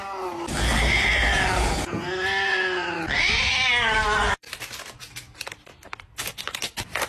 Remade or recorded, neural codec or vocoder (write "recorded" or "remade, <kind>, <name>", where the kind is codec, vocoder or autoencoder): recorded